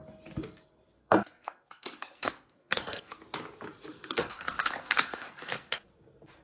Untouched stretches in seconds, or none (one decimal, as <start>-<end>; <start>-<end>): 0.0-1.0; 3.2-3.9; 5.9-6.4